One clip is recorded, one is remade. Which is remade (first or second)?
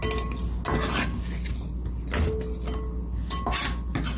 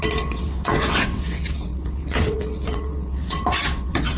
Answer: second